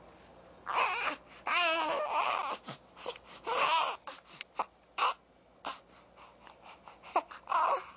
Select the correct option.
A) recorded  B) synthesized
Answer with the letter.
A